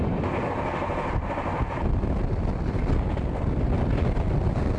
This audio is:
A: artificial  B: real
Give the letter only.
B